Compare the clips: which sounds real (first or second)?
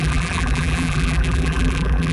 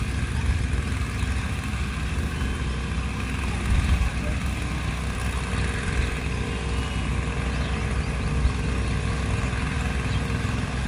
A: second